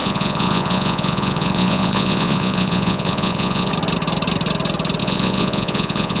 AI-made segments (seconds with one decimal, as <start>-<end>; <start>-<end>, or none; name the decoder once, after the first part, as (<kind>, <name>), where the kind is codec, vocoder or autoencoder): 0.0-3.7 (vocoder, Vocos); 5.0-6.2